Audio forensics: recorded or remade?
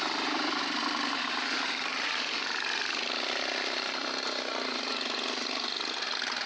recorded